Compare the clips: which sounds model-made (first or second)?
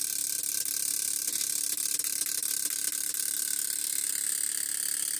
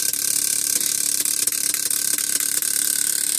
second